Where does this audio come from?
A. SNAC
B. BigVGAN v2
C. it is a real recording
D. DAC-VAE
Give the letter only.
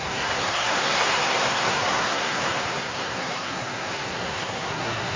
A